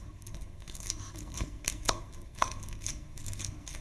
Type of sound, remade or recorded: remade